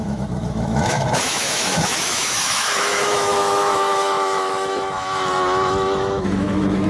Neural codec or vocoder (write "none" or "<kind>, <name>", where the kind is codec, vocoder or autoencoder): autoencoder, DAC-VAE